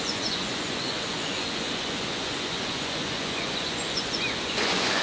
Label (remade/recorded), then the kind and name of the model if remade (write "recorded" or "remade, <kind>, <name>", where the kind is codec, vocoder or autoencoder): remade, vocoder, Vocos